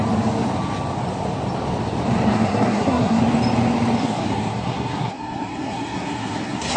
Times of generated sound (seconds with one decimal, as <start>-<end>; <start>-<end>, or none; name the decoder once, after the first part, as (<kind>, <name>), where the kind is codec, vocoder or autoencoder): 2.3-3.2 (codec, SNAC); 4.0-6.8